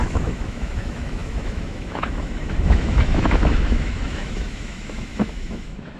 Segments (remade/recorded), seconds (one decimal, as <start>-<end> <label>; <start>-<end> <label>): 0.0-6.0 remade